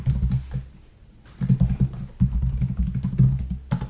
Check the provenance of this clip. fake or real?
real